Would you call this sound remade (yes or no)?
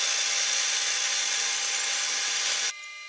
no